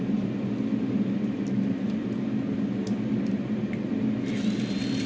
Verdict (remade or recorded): recorded